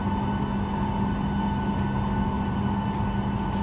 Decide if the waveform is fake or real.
real